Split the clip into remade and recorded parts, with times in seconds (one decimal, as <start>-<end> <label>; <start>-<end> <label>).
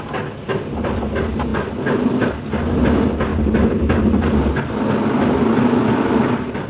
0.0-6.7 recorded